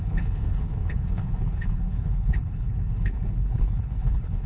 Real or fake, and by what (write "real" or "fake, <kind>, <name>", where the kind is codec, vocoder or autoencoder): fake, codec, HILCodec